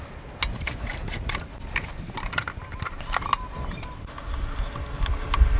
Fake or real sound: real